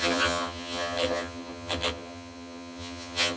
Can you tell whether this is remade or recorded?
remade